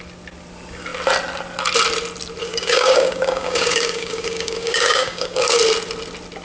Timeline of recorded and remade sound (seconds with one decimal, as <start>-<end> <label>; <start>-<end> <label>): 0.0-2.4 recorded; 2.4-5.6 remade; 5.6-6.4 recorded